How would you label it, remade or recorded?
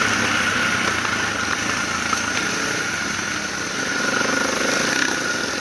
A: recorded